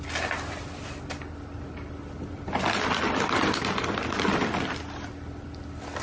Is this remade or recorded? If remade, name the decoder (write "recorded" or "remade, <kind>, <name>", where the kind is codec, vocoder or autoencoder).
recorded